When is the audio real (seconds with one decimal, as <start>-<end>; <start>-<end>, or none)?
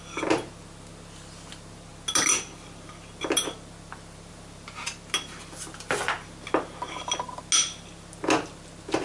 0.0-9.0